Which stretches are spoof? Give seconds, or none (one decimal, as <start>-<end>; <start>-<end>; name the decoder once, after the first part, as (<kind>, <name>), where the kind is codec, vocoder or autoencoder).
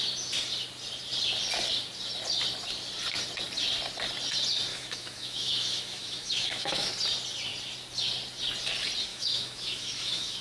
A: 4.7-6.9 (autoencoder, DAC-VAE); 9.1-10.4